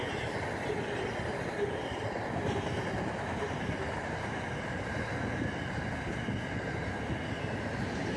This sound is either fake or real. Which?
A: real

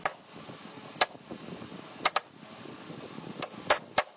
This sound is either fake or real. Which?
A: real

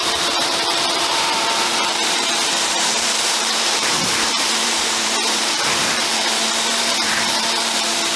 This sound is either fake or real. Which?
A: fake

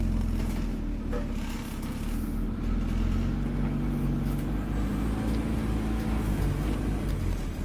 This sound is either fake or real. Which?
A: real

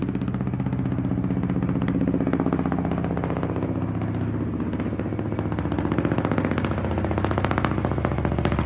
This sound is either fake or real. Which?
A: real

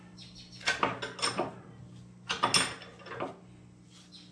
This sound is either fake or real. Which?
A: real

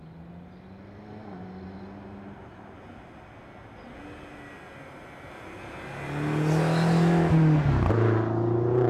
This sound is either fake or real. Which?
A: real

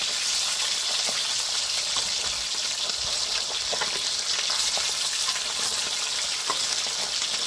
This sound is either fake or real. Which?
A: real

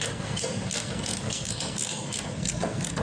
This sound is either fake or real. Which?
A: fake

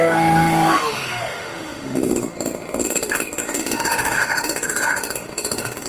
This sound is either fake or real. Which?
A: fake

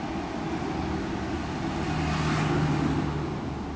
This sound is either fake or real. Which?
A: real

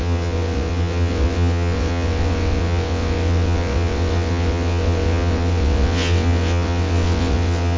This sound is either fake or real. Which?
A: fake